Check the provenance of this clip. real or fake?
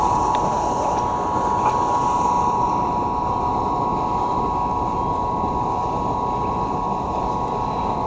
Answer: real